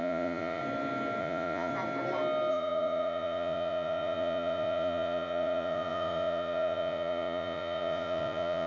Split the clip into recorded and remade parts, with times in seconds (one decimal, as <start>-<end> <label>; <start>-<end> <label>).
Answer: 0.0-0.6 remade; 0.6-1.2 recorded; 1.2-1.7 remade; 1.7-2.5 recorded; 2.5-8.7 remade